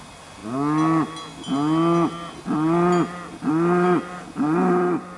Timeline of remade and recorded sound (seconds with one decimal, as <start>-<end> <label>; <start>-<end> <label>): 0.0-5.2 recorded